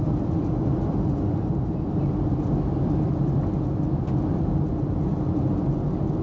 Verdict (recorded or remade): recorded